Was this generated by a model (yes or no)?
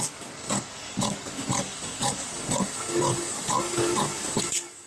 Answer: yes